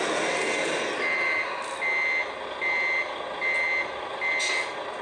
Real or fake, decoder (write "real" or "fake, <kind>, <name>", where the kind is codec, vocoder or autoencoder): real